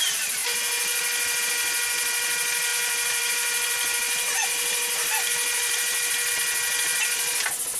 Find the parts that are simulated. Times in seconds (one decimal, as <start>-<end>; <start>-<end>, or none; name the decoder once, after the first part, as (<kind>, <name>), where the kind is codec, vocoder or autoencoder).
2.7-6.3 (vocoder, BigVGAN v2)